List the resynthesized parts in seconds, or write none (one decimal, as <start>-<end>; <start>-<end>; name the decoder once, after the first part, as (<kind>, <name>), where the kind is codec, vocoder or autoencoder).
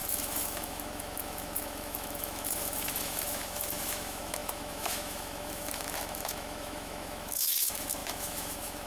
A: 0.0-8.9 (autoencoder, DAC-VAE)